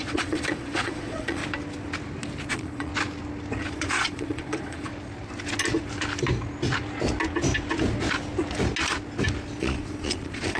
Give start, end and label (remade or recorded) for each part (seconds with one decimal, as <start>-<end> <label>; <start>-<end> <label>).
0.0-1.4 remade; 1.4-2.5 recorded; 2.5-2.9 remade; 2.9-3.6 recorded; 3.6-4.9 remade; 4.9-9.6 recorded; 9.6-10.6 remade